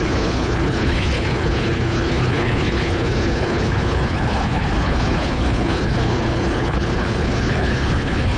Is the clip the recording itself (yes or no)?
no